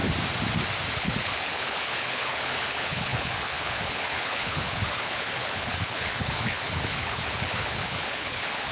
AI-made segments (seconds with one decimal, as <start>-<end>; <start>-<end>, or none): 0.9-8.7